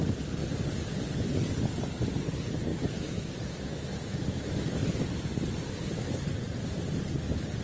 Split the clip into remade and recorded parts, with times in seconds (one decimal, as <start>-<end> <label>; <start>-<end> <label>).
0.0-2.7 recorded; 2.7-4.7 remade; 4.7-7.6 recorded

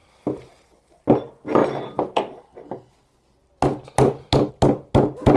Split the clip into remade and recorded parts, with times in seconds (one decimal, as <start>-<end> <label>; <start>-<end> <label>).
0.0-5.4 recorded

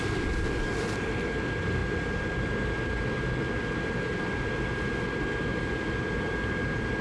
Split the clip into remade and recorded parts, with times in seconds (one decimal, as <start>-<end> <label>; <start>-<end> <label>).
0.0-7.0 recorded

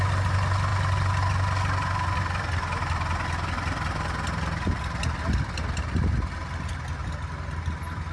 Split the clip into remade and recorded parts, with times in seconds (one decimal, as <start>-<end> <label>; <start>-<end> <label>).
0.0-8.1 recorded